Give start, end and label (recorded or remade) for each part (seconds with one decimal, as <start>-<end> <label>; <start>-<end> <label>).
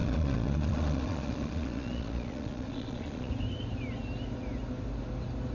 0.0-3.3 remade; 3.3-5.5 recorded